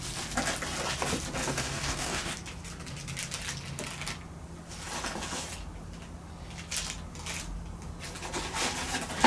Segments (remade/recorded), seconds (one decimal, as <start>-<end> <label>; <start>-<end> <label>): 0.0-1.4 recorded; 1.4-2.3 remade; 2.3-9.3 recorded